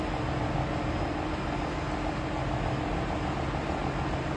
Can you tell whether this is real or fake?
real